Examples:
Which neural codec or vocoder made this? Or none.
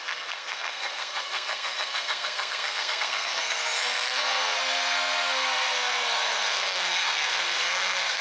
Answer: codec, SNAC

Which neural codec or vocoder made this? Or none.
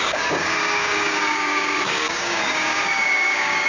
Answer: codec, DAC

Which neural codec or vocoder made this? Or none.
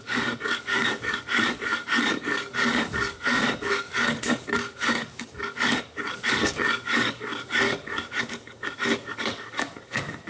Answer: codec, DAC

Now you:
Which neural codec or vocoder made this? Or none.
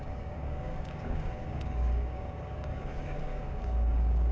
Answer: codec, DAC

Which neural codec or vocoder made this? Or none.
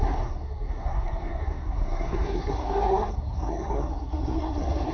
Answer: codec, SNAC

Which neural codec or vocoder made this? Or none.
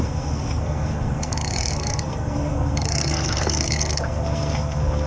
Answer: codec, SNAC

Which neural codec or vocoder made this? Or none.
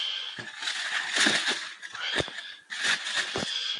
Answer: vocoder, Vocos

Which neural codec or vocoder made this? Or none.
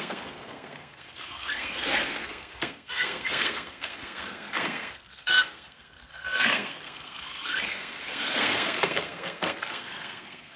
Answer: codec, SNAC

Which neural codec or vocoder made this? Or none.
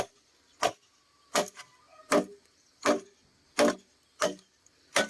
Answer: none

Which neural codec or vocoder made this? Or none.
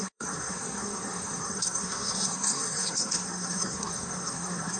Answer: codec, SNAC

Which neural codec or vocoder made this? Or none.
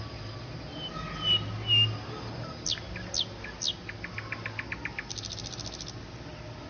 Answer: none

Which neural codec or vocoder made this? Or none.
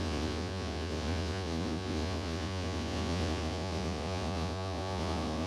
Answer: vocoder, Vocos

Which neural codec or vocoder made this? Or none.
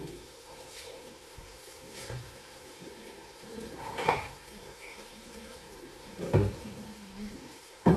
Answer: codec, SNAC